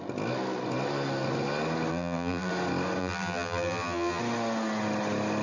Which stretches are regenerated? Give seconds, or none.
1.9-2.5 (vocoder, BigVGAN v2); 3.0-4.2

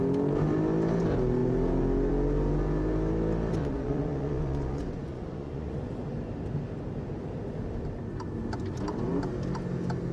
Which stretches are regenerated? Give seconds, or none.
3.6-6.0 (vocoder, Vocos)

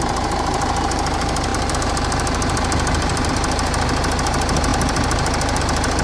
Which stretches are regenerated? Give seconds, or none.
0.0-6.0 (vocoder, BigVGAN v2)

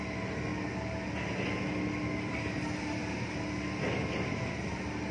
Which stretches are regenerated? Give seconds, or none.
none